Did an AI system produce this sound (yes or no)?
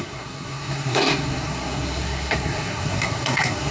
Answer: yes